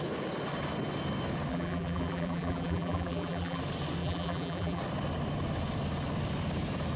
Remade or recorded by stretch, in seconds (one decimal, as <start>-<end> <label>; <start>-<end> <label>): 0.0-1.5 recorded; 1.5-3.6 remade; 3.6-4.0 recorded; 4.0-4.8 remade; 4.8-7.0 recorded

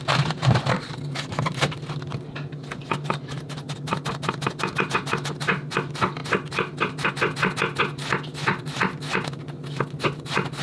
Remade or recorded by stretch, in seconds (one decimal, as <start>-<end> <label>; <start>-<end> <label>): 0.0-10.6 recorded

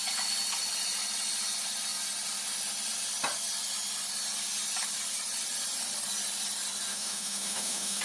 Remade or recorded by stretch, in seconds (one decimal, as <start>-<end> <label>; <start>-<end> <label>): 0.0-6.9 recorded; 6.9-8.0 remade

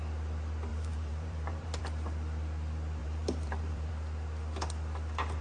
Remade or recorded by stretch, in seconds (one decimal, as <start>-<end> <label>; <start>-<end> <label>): 0.0-0.7 recorded; 0.7-1.8 remade; 1.8-3.0 recorded; 3.0-3.9 remade; 3.9-5.4 recorded

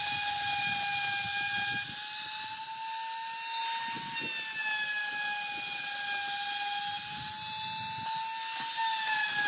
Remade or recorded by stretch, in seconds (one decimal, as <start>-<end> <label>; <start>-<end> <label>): 0.0-9.5 recorded

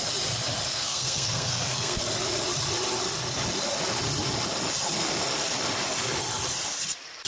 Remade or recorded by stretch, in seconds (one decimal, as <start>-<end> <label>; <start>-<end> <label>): 0.0-0.7 recorded; 0.7-2.0 remade; 2.0-7.3 recorded

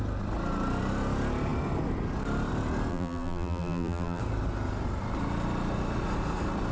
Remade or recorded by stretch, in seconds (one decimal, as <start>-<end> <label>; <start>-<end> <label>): 0.0-2.9 recorded; 2.9-4.2 remade; 4.2-6.7 recorded

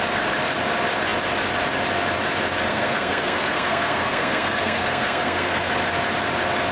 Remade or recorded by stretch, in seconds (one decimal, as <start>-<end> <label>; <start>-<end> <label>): 0.0-2.7 recorded; 2.7-5.7 remade; 5.7-6.7 recorded